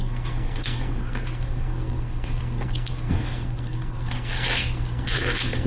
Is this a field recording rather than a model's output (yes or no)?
no